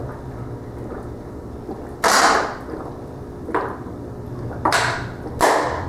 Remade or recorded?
recorded